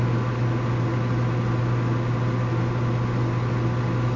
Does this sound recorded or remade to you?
recorded